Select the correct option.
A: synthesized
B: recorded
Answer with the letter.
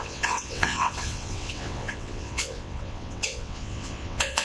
A